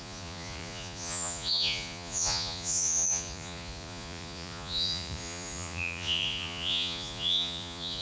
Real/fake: fake